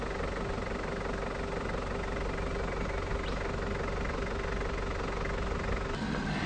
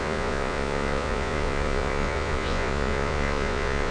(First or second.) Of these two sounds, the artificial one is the second